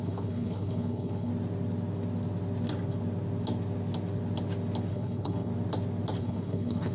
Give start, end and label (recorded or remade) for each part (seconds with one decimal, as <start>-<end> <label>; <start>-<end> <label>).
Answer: 0.0-1.3 remade; 1.3-4.9 recorded; 4.9-5.5 remade; 5.5-6.2 recorded; 6.2-6.9 remade

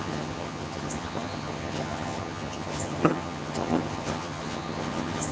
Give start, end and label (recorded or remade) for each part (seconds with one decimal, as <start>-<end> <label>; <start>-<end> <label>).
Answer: 0.0-5.3 remade